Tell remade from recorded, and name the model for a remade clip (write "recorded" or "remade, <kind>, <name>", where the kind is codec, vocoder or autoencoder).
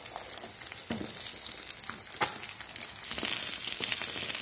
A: recorded